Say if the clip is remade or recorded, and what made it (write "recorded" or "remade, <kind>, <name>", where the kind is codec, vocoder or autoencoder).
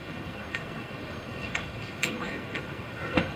remade, codec, SNAC